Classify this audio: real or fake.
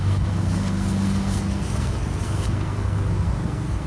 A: fake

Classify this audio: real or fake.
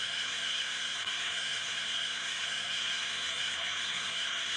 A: fake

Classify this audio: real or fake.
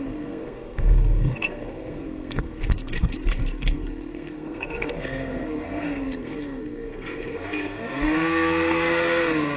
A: fake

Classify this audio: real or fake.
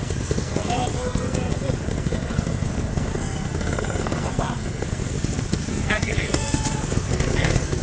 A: fake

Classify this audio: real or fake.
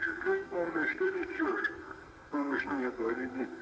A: fake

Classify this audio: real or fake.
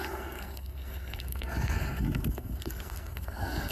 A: fake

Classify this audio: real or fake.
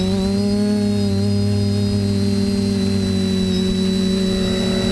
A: real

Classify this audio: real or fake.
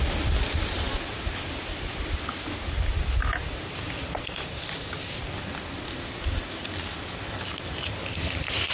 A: real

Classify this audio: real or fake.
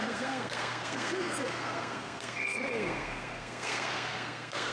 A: fake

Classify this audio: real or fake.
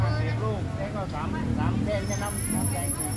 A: real